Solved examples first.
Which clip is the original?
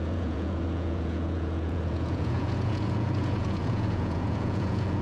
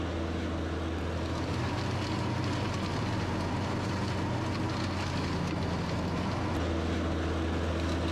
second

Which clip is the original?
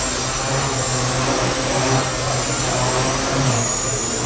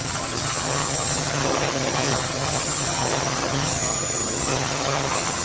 first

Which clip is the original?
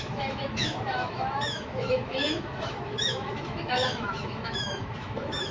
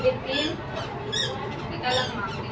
second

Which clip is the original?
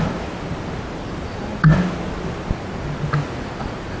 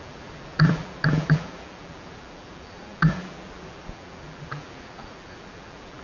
first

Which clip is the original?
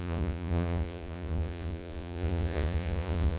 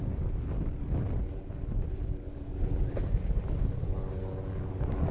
second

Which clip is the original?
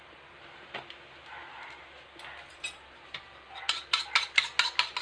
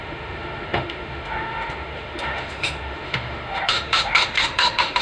first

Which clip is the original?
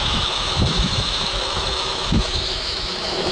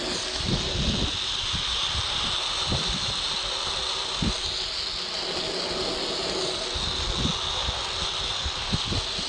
second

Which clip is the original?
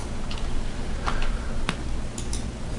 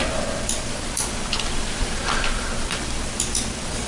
first